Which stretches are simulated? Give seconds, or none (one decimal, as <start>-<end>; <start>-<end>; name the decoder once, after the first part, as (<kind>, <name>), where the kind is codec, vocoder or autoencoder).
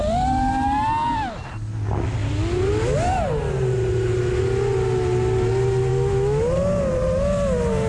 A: 5.9-6.4 (autoencoder, DAC-VAE)